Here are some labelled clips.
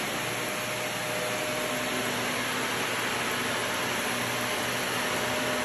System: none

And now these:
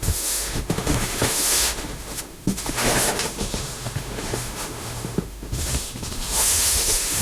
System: autoencoder, DAC-VAE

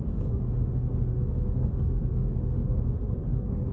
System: autoencoder, DAC-VAE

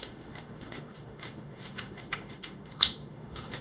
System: autoencoder, DAC-VAE